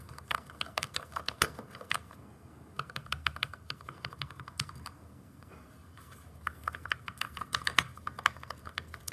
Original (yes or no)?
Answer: no